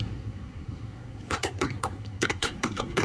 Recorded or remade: remade